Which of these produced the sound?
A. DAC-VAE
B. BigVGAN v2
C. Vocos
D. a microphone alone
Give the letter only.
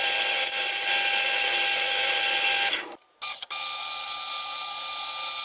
D